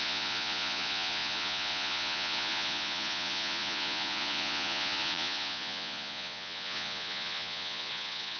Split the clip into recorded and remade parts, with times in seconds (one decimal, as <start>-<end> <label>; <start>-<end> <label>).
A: 0.0-8.4 remade